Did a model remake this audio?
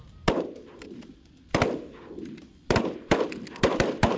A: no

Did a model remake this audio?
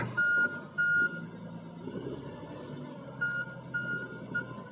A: no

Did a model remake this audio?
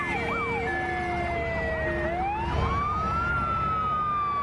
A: no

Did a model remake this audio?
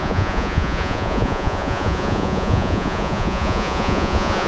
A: yes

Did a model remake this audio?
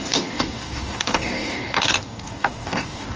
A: yes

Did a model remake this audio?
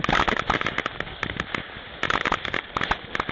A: no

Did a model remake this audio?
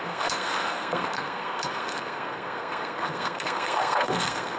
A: yes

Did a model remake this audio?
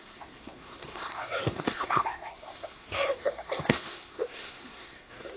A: yes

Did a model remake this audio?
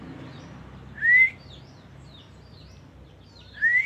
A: no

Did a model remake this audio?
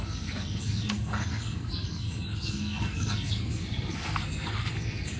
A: yes